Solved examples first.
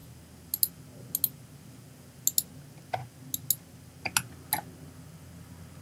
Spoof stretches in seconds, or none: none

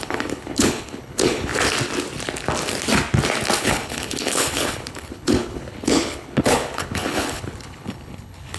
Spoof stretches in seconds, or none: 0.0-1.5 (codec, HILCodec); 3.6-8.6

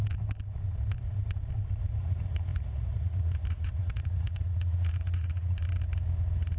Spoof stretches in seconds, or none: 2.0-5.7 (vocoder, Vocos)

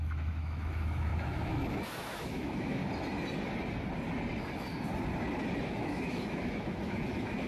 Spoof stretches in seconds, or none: 0.0-2.8 (autoencoder, DAC-VAE); 5.6-7.5

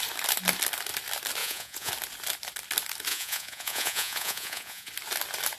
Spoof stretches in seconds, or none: 1.4-1.9 (vocoder, Vocos); 3.1-4.9

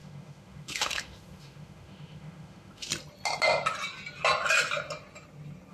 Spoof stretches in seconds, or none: 0.0-2.9 (autoencoder, DAC-VAE)

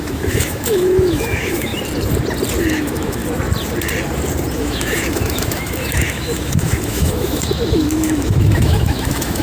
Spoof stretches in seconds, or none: 0.0-1.7 (autoencoder, DAC-VAE); 2.6-3.2; 4.5-9.4

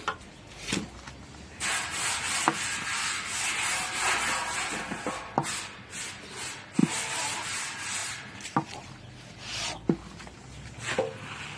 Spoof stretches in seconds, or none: 6.8-7.6 (vocoder, BigVGAN v2); 8.0-9.3